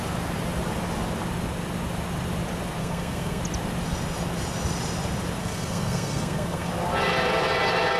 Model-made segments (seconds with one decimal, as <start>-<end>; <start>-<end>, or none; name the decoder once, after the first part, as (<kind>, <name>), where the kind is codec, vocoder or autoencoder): 2.8-3.4 (codec, SNAC); 5.4-6.7